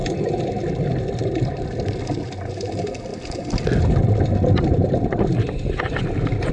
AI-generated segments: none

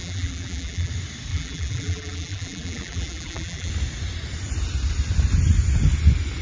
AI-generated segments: 0.0-0.9 (vocoder, BigVGAN v2); 1.3-3.7

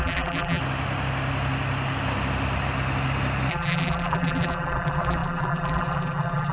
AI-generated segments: 0.0-0.6 (vocoder, BigVGAN v2); 3.5-6.5

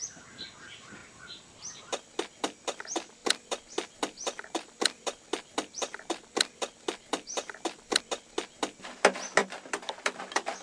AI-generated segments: 1.0-1.8 (vocoder, BigVGAN v2); 3.2-8.0; 9.4-10.2

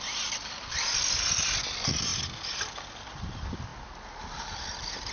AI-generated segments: 0.0-2.1 (vocoder, BigVGAN v2); 2.9-3.7; 4.4-5.1